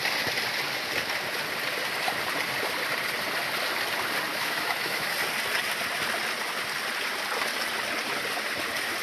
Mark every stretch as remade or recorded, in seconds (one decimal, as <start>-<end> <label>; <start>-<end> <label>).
0.0-4.3 recorded; 4.3-5.1 remade; 5.1-9.0 recorded